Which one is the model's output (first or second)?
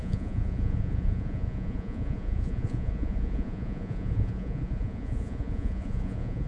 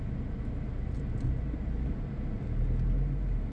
first